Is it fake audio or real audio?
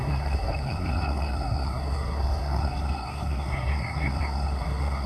fake